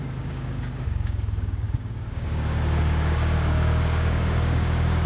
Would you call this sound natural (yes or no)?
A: no